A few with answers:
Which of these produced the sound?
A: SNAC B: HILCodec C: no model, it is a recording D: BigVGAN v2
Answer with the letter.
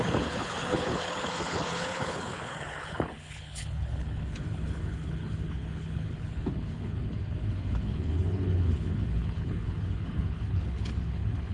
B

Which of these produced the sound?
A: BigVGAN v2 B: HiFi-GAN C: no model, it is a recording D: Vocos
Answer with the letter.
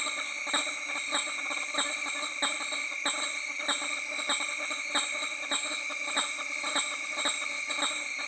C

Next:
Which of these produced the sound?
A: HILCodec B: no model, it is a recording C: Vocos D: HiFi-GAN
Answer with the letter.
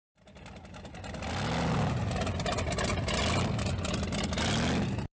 B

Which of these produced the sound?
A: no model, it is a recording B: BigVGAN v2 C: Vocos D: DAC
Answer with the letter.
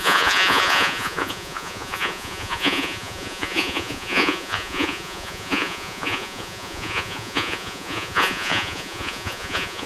C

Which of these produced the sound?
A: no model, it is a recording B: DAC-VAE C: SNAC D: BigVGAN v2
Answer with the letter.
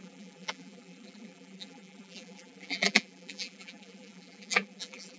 D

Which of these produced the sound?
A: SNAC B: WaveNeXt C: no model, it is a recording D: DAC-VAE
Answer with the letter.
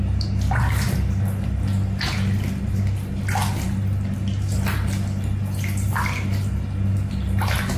C